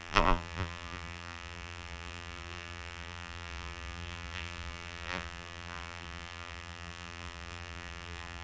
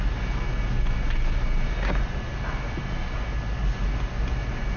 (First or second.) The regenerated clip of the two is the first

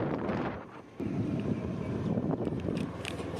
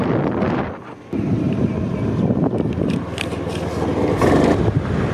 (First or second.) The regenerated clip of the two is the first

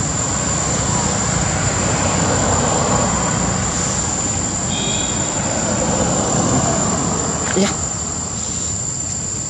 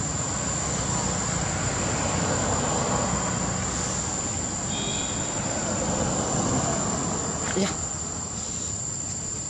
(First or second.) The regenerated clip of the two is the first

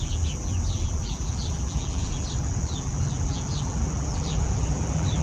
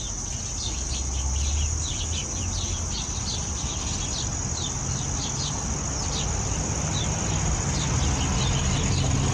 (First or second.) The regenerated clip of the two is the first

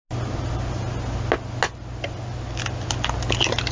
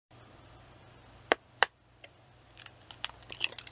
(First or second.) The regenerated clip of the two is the second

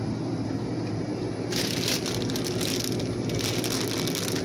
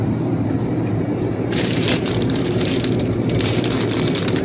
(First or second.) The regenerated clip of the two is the second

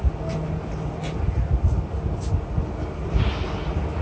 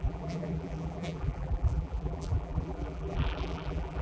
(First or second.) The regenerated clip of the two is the second